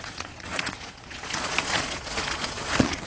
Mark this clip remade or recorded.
remade